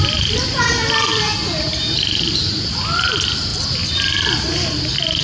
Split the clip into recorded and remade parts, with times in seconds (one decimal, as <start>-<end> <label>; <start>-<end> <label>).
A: 0.0-5.2 recorded